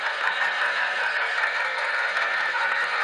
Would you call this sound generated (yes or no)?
yes